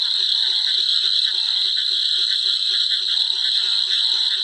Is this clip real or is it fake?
real